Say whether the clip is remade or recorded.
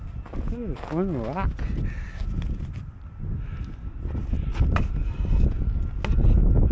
recorded